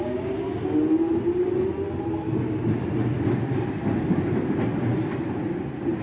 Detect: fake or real real